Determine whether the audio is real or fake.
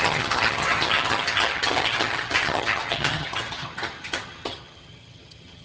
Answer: fake